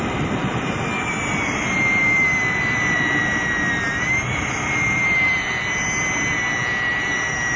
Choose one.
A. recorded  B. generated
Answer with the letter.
A